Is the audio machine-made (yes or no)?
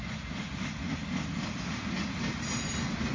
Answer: no